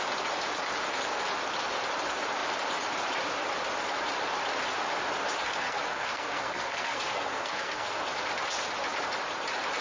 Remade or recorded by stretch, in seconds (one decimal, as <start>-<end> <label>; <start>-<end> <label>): 0.0-5.5 recorded; 5.5-8.0 remade; 8.0-9.8 recorded